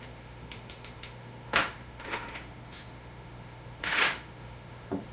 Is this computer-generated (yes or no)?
yes